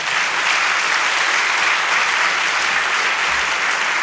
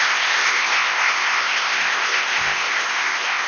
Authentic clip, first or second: first